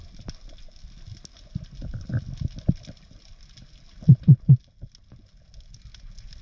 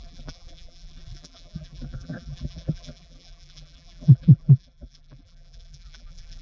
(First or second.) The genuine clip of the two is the first